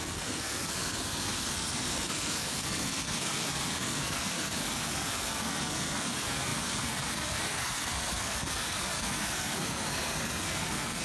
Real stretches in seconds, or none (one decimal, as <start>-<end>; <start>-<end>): none